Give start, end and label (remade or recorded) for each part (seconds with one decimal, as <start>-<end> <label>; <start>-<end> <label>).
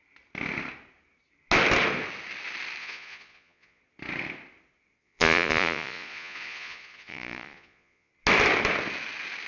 0.0-2.8 recorded; 2.8-3.8 remade; 3.8-5.0 recorded; 5.0-8.1 remade; 8.1-9.5 recorded